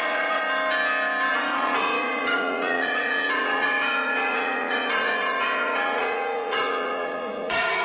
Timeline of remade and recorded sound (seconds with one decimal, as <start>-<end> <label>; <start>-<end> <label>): 0.0-0.4 remade; 0.4-1.3 recorded; 1.3-7.8 remade